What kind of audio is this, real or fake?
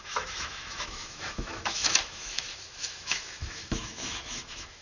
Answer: fake